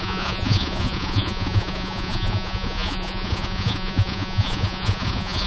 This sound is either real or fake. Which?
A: fake